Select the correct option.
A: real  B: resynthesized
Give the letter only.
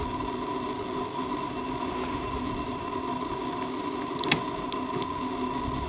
A